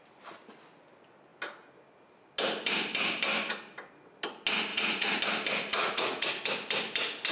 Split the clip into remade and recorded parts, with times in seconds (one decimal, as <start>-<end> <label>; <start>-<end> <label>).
0.0-4.7 recorded; 4.7-5.2 remade; 5.2-5.7 recorded; 5.7-6.3 remade; 6.3-7.3 recorded

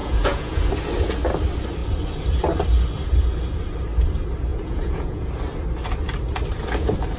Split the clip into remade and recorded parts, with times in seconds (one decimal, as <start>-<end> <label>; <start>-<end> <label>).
0.0-0.7 remade; 0.7-4.5 recorded; 4.5-5.3 remade; 5.3-7.2 recorded

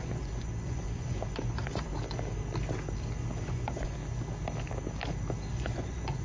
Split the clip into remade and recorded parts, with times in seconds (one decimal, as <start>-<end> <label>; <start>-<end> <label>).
0.0-1.9 remade; 1.9-3.4 recorded; 3.4-4.0 remade; 4.0-5.5 recorded; 5.5-6.2 remade

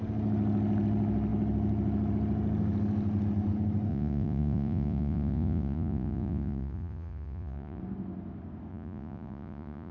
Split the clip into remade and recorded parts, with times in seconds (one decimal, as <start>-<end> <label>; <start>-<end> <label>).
0.0-3.9 recorded; 3.9-7.8 remade; 7.8-8.7 recorded; 8.7-9.9 remade

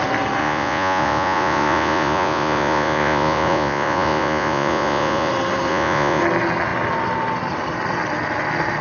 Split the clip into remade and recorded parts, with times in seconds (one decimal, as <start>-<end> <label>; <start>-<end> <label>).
0.0-0.4 recorded; 0.4-5.3 remade; 5.3-5.7 recorded; 5.7-6.2 remade; 6.2-8.8 recorded